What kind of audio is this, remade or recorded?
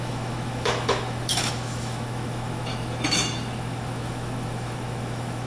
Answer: remade